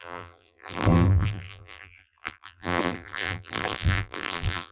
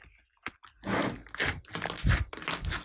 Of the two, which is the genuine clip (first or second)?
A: second